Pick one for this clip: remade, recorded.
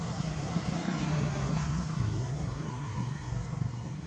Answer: remade